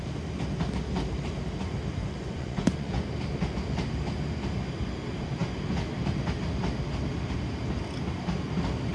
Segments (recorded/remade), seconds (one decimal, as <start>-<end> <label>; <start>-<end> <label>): 0.0-2.0 recorded; 2.0-3.1 remade; 3.1-8.9 recorded